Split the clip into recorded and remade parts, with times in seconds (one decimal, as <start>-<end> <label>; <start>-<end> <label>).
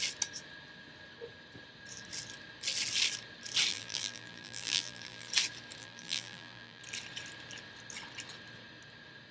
0.0-3.7 recorded; 3.7-5.3 remade; 5.3-5.8 recorded; 5.8-6.8 remade; 6.8-9.3 recorded